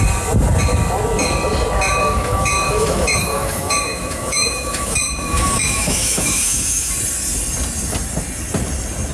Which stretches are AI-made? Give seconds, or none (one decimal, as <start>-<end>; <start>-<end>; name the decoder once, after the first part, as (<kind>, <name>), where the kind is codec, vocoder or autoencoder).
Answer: 2.0-6.9 (autoencoder, DAC-VAE)